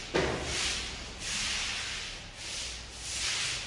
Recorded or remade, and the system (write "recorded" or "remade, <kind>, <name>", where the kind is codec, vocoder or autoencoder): recorded